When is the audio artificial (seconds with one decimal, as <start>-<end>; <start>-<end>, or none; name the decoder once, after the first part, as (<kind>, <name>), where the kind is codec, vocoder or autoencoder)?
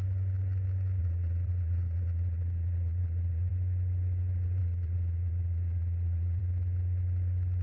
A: 1.0-3.5 (vocoder, Vocos); 4.6-6.4